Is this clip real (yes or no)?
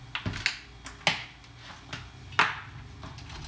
yes